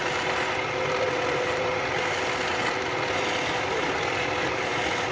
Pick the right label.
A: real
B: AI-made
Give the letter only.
A